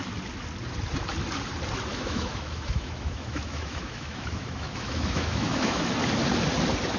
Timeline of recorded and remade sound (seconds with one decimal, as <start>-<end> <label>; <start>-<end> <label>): 0.0-1.9 recorded; 1.9-5.9 remade; 5.9-7.0 recorded